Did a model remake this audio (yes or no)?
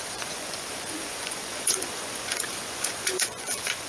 yes